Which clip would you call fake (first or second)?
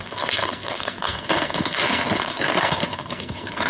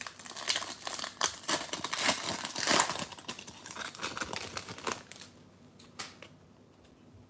first